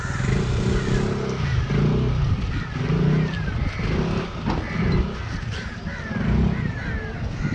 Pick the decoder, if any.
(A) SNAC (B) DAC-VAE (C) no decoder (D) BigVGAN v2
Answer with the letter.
C